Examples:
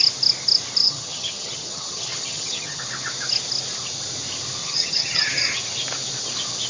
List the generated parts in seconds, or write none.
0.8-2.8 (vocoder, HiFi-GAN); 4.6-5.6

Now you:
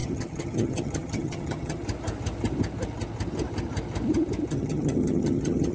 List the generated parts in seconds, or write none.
0.0-1.8 (vocoder, HiFi-GAN); 4.5-5.7

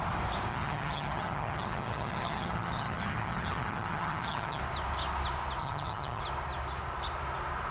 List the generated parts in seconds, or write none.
0.5-4.6 (vocoder, HiFi-GAN); 5.6-6.2

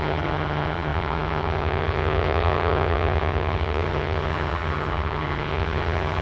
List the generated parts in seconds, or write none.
0.0-6.2 (vocoder, HiFi-GAN)

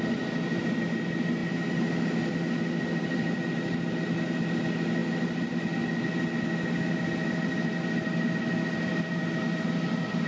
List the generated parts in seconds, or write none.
none